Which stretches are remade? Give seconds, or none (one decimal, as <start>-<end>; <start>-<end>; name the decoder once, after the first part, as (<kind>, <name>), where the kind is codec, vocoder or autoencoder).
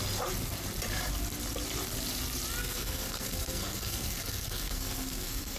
2.6-5.6 (codec, SNAC)